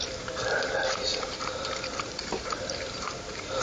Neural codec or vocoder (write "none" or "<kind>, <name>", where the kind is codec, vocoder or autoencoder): vocoder, BigVGAN v2